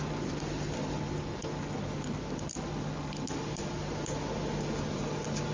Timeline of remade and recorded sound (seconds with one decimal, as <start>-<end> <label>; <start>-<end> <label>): 0.0-5.5 recorded